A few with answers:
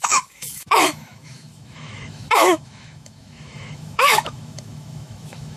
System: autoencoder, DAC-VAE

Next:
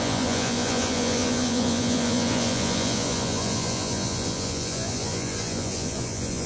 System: vocoder, Vocos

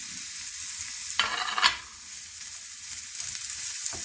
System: none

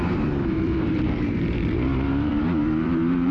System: vocoder, BigVGAN v2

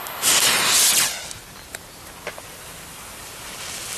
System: none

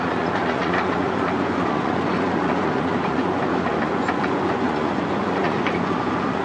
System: vocoder, Vocos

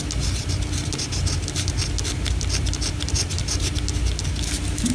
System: none